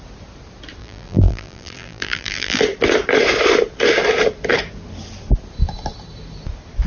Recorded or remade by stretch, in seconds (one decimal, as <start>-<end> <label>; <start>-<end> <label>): 0.0-0.8 recorded; 0.8-2.6 remade; 2.6-6.9 recorded